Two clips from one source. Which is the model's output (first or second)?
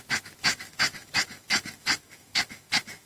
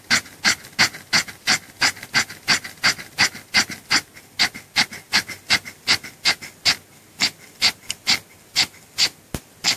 first